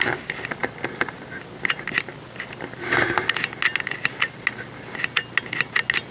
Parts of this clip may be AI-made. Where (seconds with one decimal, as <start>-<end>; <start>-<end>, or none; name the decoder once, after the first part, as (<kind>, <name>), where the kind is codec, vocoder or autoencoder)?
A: none